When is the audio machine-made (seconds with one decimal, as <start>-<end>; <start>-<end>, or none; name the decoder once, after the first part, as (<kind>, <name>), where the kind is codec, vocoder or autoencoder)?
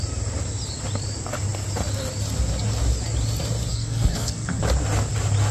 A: 3.7-4.6 (codec, SNAC)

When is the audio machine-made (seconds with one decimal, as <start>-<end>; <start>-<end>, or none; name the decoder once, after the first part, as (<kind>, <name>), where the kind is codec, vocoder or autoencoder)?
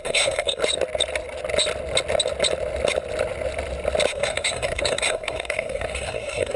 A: 0.0-0.6 (codec, SNAC); 4.1-6.6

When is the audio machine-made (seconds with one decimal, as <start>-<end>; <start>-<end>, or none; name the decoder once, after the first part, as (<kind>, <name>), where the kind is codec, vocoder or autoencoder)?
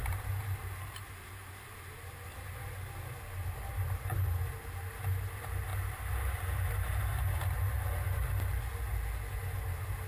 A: none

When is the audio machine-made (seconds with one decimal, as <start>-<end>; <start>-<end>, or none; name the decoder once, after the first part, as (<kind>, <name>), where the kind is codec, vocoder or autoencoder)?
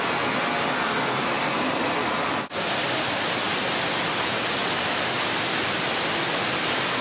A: none